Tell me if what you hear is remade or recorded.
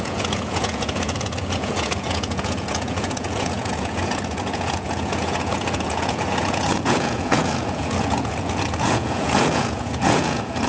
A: remade